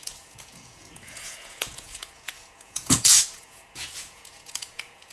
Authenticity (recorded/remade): remade